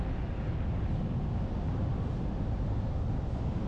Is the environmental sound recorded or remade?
recorded